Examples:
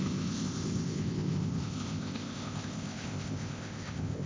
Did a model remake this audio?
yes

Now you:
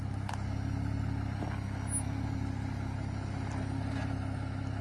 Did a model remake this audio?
no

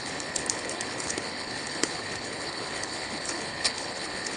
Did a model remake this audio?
yes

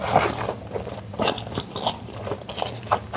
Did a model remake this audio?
no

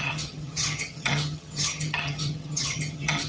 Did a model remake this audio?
yes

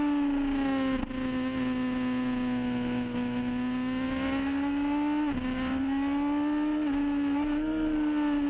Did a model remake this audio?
no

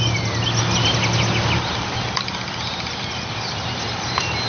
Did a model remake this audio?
no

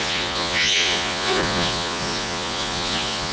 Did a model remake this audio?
yes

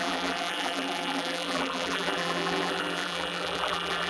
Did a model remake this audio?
yes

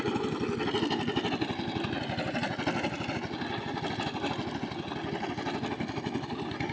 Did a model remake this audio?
no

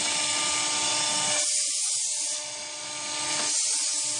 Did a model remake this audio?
no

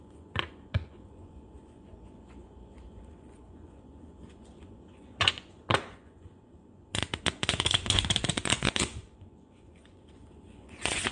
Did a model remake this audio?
yes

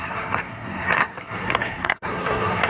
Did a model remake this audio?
yes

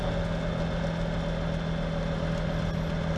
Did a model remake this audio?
no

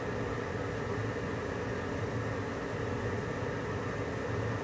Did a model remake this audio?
no